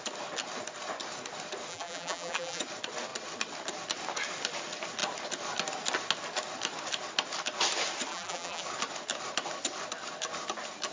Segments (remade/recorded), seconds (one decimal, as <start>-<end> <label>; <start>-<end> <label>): 0.0-1.7 recorded; 1.7-2.6 remade; 2.6-8.1 recorded; 8.1-8.6 remade; 8.6-10.9 recorded